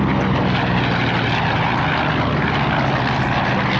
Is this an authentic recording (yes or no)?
yes